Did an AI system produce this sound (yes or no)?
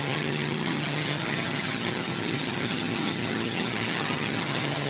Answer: yes